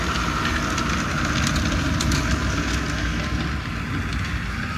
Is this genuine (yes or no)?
yes